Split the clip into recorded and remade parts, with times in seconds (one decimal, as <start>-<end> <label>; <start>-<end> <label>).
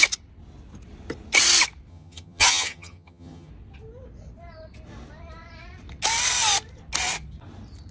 0.0-1.9 recorded; 1.9-3.5 remade; 3.5-7.9 recorded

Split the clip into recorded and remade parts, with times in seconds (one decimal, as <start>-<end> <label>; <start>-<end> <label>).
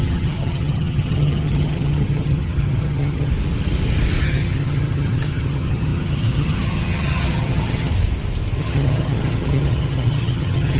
0.0-3.3 remade; 3.3-4.2 recorded; 4.2-7.9 remade; 7.9-8.6 recorded; 8.6-10.8 remade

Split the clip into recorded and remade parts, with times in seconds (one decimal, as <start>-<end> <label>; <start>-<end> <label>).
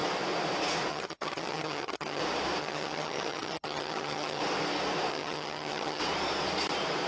0.0-0.9 recorded; 0.9-2.2 remade; 2.2-2.6 recorded; 2.6-4.4 remade; 4.4-5.1 recorded; 5.1-6.0 remade; 6.0-7.1 recorded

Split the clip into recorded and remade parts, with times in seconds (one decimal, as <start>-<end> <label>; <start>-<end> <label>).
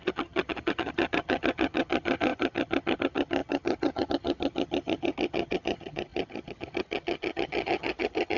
0.0-8.4 remade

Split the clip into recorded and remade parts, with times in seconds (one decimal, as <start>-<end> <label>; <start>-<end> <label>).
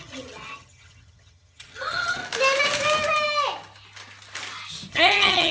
0.0-2.2 remade; 2.2-4.9 recorded; 4.9-5.5 remade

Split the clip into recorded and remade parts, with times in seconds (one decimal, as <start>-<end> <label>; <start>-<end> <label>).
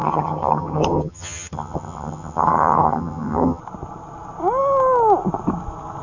0.0-3.6 remade; 3.6-6.0 recorded